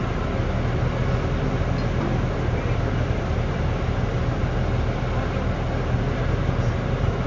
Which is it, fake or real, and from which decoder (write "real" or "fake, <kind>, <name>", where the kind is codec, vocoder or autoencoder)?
real